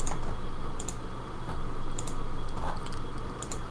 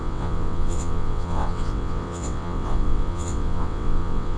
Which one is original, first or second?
first